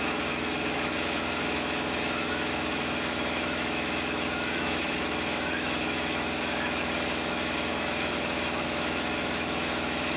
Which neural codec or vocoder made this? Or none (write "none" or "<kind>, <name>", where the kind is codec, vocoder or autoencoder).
autoencoder, DAC-VAE